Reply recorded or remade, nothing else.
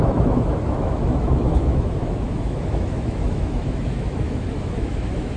remade